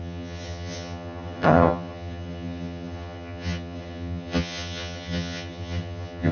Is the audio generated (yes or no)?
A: yes